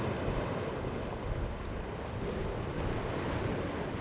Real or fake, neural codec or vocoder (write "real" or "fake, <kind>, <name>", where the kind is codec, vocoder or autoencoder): real